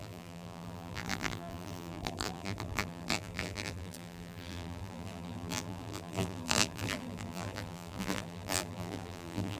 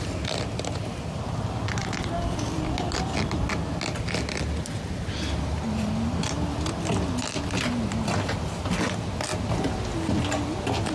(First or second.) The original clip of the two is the second